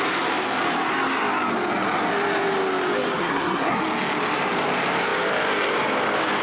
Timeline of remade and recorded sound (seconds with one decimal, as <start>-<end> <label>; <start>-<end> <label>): 0.0-3.2 recorded; 3.2-3.8 remade; 3.8-6.4 recorded